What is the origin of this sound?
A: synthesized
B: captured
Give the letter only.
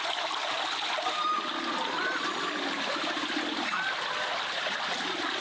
B